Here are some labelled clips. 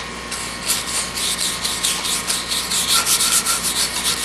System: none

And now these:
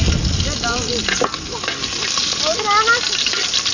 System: none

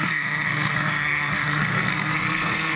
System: codec, SNAC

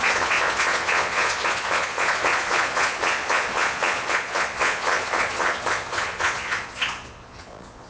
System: vocoder, Vocos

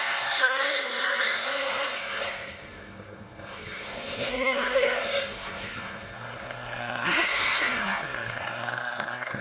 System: codec, SNAC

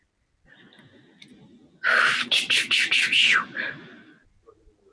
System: none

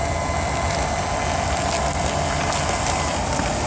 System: none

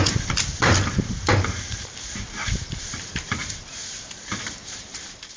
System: vocoder, BigVGAN v2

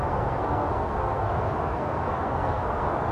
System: codec, SNAC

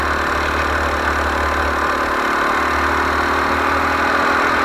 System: none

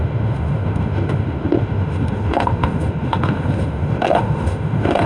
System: autoencoder, DAC-VAE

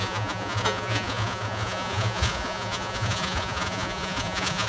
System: vocoder, Vocos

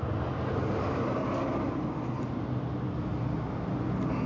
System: none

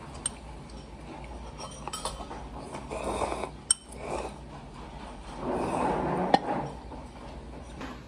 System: none